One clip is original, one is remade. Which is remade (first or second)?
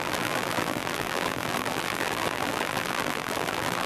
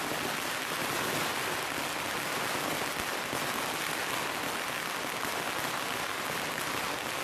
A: first